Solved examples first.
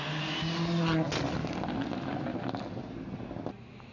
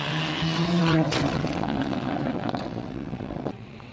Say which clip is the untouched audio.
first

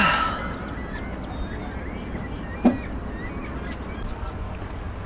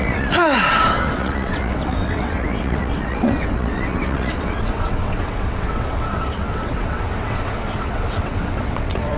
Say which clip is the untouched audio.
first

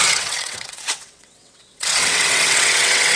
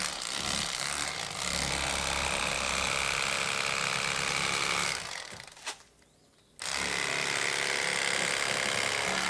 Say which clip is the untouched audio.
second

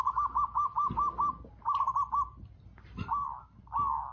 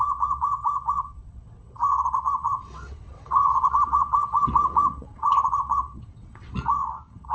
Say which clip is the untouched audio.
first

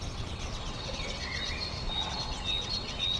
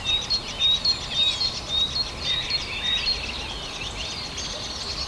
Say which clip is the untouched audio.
second